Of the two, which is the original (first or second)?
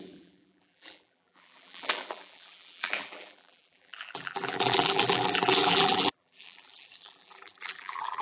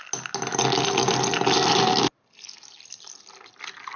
second